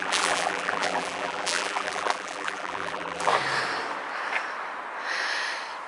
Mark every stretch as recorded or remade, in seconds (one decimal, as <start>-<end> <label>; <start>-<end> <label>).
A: 0.0-3.3 remade; 3.3-5.9 recorded